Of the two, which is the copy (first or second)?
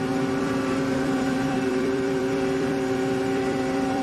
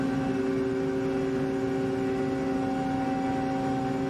first